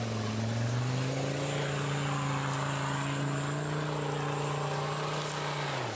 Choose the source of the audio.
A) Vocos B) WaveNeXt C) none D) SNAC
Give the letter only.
C